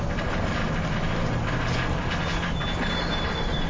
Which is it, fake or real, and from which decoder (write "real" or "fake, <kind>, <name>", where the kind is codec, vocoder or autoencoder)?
real